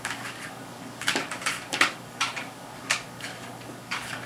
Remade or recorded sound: remade